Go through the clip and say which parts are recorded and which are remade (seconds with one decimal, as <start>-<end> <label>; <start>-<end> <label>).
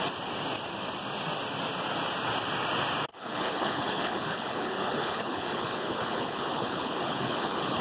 0.0-3.1 recorded; 3.1-7.8 remade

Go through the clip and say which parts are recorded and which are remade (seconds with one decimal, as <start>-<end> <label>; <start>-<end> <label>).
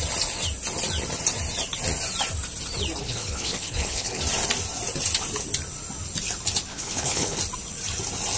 0.0-3.0 recorded; 3.0-4.2 remade; 4.2-6.7 recorded; 6.7-7.4 remade; 7.4-8.4 recorded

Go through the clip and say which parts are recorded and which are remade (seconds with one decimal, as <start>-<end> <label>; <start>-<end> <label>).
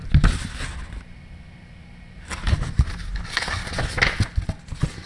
0.0-3.1 recorded; 3.1-3.6 remade; 3.6-5.1 recorded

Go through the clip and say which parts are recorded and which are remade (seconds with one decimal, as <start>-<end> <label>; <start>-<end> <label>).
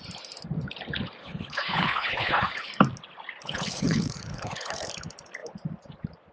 0.0-1.2 recorded; 1.2-2.7 remade; 2.7-3.4 recorded; 3.4-4.9 remade; 4.9-6.3 recorded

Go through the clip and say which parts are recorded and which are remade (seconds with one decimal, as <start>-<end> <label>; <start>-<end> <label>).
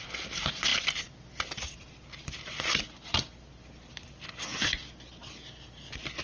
0.0-6.2 recorded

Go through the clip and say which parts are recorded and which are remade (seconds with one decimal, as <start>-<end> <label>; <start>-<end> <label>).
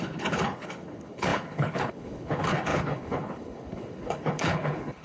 0.0-5.0 remade